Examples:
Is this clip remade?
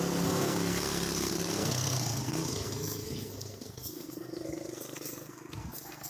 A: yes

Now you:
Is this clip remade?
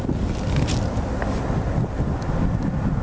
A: no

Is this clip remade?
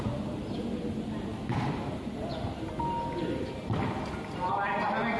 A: no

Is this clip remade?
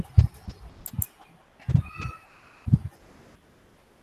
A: no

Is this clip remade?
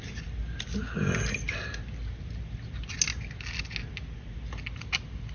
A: no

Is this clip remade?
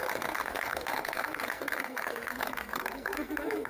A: yes